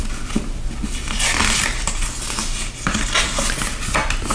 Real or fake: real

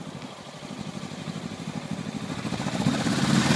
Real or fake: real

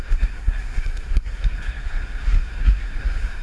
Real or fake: fake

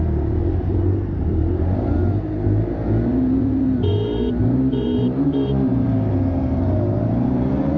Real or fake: fake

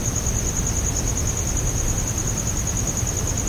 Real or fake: real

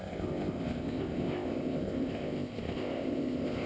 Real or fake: fake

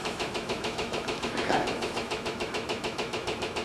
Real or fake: fake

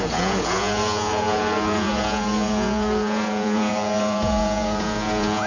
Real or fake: fake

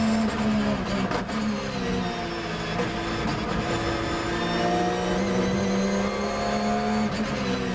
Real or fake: real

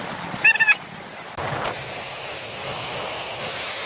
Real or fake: real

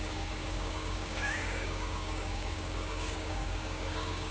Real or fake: fake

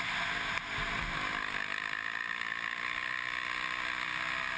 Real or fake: real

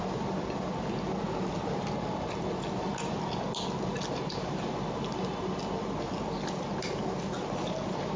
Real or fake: real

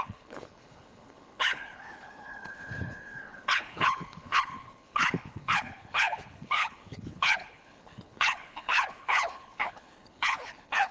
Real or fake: fake